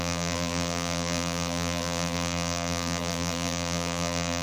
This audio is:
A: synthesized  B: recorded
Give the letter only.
A